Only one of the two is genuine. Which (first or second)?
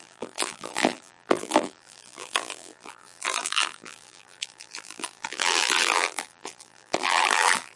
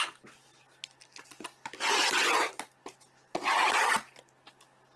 second